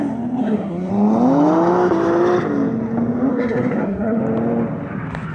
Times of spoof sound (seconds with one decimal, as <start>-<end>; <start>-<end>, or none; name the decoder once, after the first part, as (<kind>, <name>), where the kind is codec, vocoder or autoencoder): 0.4-0.9 (codec, SNAC); 3.3-4.2